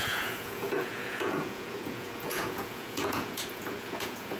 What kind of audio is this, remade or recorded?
remade